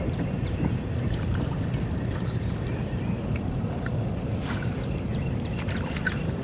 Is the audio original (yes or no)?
no